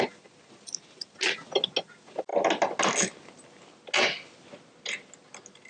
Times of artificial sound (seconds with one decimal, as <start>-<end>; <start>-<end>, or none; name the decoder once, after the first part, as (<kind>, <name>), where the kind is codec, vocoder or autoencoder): none